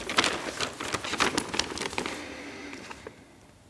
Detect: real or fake real